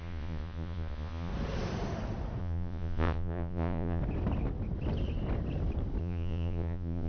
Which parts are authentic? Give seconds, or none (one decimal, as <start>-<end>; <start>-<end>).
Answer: 1.3-2.4; 4.0-6.0